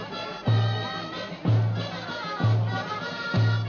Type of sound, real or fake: real